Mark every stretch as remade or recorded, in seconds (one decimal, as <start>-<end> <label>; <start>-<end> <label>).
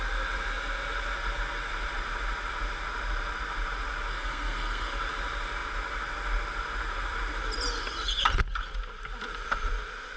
0.0-4.1 recorded; 4.1-4.9 remade; 4.9-10.2 recorded